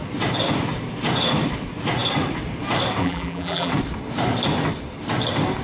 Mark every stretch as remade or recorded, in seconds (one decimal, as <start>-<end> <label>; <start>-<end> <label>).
0.0-3.0 recorded; 3.0-3.7 remade; 3.7-5.6 recorded